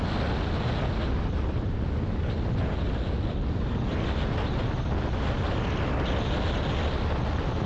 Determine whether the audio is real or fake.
real